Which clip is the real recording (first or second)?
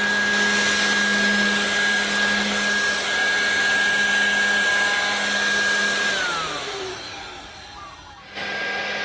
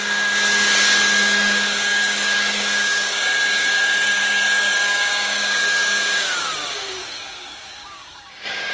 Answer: first